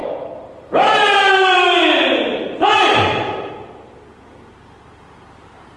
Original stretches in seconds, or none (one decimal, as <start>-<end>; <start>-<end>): none

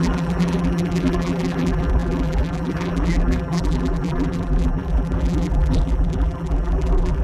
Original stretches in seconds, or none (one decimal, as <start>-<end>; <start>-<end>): none

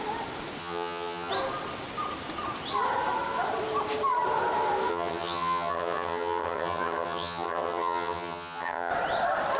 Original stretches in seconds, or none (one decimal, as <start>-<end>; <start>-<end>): 0.0-0.6; 1.3-4.9; 8.9-9.6